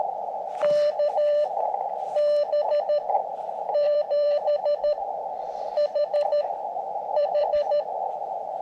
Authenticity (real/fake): fake